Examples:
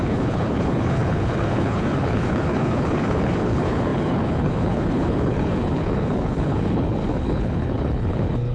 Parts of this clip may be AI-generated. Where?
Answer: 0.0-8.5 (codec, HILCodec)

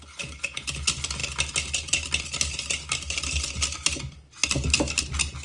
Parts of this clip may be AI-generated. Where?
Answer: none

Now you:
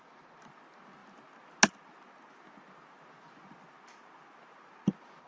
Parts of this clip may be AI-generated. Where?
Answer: none

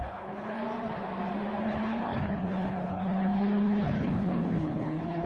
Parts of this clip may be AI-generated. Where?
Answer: 0.0-0.6 (codec, HILCodec); 1.6-5.3

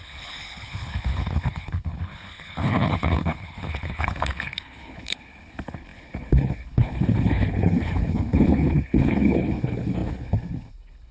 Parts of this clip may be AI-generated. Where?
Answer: 0.0-11.1 (codec, HILCodec)